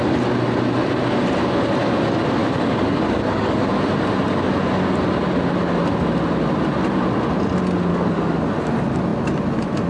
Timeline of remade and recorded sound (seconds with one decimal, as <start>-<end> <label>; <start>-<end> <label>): 0.0-2.4 recorded; 2.4-3.7 remade; 3.7-7.9 recorded; 7.9-8.5 remade; 8.5-9.9 recorded